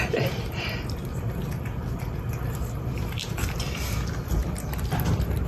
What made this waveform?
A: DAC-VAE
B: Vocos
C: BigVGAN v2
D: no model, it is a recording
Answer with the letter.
D